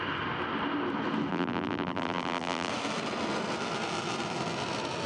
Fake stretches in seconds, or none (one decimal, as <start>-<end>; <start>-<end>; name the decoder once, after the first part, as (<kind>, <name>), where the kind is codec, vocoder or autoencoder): 1.3-2.7 (vocoder, BigVGAN v2)